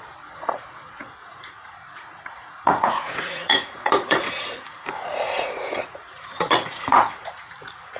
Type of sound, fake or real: fake